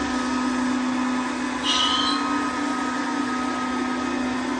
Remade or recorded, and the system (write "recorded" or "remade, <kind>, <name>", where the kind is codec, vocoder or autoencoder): recorded